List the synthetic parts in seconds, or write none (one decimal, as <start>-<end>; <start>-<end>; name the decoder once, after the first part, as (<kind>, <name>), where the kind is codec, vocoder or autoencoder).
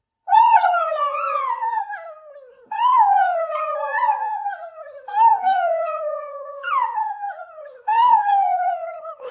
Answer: 0.0-1.8 (vocoder, Vocos); 2.5-9.3